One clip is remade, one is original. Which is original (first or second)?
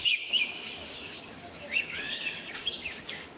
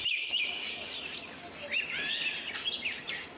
second